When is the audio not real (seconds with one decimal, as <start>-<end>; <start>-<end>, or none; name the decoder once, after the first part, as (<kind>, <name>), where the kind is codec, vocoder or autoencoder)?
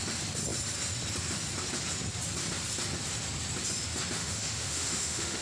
4.2-5.4 (autoencoder, DAC-VAE)